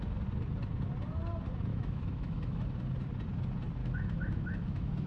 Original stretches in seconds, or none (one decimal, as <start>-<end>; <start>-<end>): 0.0-1.7; 2.8-3.8